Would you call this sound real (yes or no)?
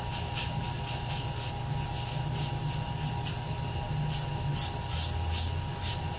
yes